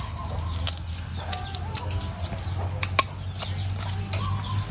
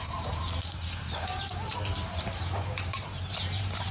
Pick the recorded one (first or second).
first